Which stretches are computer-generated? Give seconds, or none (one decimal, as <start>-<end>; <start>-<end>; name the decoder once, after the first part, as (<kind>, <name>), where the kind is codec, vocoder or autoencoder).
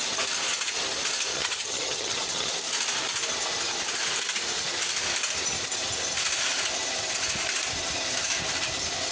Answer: 1.3-2.5 (vocoder, HiFi-GAN)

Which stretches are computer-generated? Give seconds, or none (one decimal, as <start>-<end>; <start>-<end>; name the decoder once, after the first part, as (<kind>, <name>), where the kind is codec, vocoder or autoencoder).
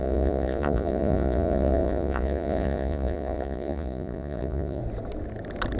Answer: 0.0-4.8 (vocoder, Vocos)